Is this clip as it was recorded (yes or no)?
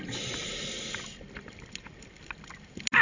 yes